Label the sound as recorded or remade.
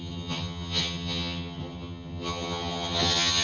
remade